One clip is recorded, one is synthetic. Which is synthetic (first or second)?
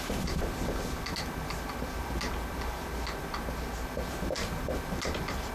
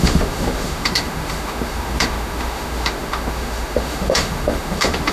second